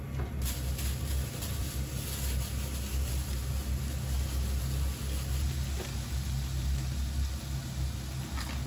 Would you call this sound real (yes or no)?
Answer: yes